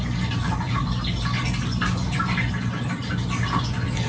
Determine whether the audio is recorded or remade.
recorded